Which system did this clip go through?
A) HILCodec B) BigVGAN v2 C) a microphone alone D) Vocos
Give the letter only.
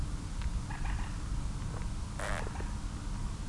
C